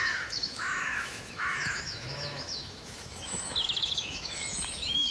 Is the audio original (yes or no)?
no